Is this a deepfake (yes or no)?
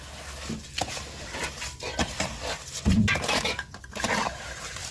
no